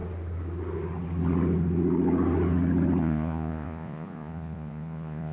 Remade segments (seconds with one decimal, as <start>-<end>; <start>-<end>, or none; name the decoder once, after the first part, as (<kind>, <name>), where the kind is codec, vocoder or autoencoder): 3.0-5.3 (vocoder, Vocos)